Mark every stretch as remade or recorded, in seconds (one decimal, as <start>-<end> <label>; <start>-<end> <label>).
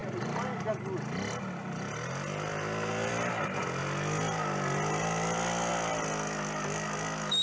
0.0-0.7 remade; 0.7-2.5 recorded; 2.5-3.1 remade; 3.1-7.4 recorded